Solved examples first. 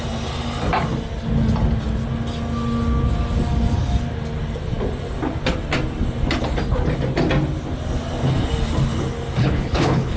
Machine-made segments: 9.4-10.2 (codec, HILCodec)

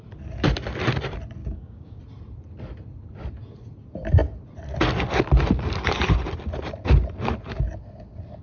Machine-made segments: 1.4-2.0 (codec, DAC)